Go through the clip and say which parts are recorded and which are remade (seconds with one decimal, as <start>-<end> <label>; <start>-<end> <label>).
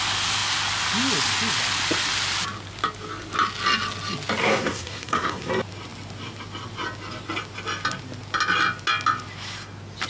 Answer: 0.0-4.4 recorded; 4.4-5.5 remade; 5.5-10.1 recorded